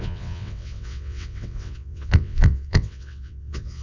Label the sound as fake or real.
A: fake